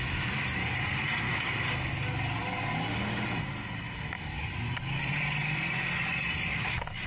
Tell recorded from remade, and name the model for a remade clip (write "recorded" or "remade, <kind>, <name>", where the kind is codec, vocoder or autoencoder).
recorded